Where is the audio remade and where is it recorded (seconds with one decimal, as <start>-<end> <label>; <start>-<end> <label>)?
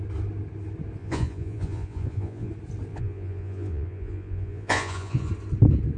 0.0-1.0 recorded; 1.0-2.5 remade; 2.5-2.9 recorded; 2.9-5.3 remade; 5.3-6.0 recorded